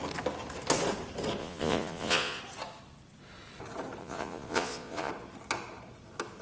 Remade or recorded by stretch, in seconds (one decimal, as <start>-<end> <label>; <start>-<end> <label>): 0.0-1.4 recorded; 1.4-2.4 remade; 2.4-4.0 recorded; 4.0-5.1 remade; 5.1-6.4 recorded